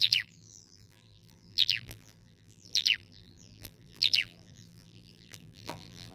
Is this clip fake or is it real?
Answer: fake